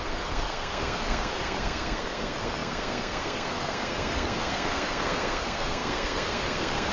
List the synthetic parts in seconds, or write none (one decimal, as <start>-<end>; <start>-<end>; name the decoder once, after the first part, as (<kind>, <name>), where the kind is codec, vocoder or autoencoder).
0.0-6.9 (codec, SNAC)